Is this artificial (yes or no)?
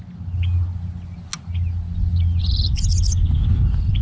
no